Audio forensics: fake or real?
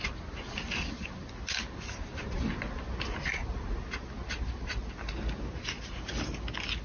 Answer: real